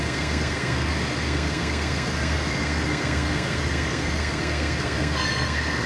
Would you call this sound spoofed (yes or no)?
yes